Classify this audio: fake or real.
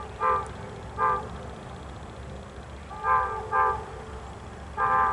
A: real